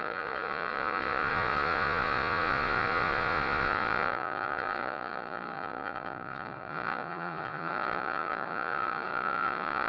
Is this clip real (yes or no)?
no